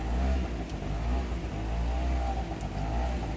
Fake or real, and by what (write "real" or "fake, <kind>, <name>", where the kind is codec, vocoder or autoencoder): real